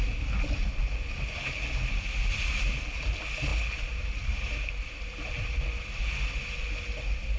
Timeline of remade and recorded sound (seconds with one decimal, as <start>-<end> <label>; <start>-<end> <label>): 0.0-7.4 recorded